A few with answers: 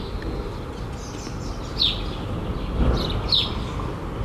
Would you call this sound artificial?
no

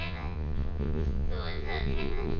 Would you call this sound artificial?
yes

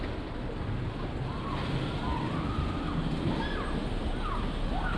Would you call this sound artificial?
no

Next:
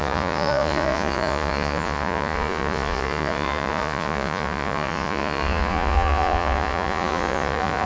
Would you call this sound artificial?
yes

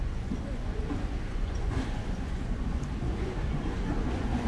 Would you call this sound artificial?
yes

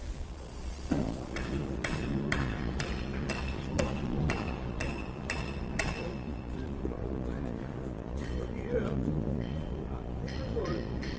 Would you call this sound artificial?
yes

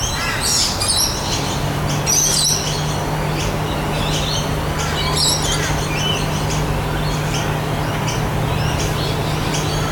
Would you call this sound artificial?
no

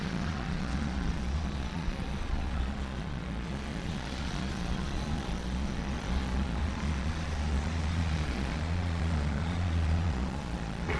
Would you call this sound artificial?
yes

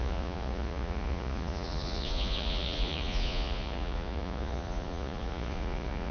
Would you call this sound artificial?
yes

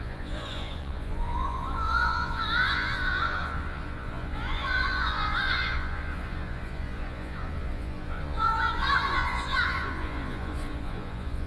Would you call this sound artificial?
yes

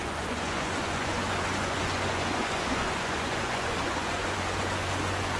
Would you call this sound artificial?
yes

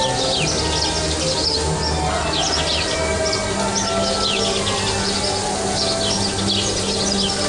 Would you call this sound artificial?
no